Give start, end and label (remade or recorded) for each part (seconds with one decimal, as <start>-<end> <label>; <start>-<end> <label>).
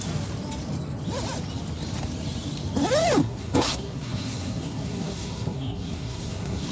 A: 0.0-3.2 recorded; 3.2-6.7 remade